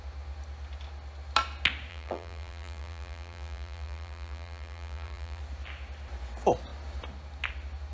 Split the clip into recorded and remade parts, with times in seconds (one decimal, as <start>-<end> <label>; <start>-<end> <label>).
0.0-1.9 recorded; 1.9-5.4 remade; 5.4-7.9 recorded